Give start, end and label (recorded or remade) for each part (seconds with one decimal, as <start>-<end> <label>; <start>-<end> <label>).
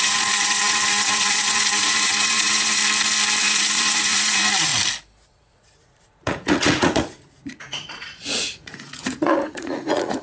0.0-2.8 remade; 2.8-3.4 recorded; 3.4-4.7 remade; 4.7-5.3 recorded; 5.3-10.2 remade